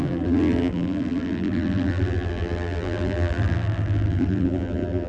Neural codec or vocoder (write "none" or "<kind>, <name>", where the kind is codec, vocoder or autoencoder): vocoder, BigVGAN v2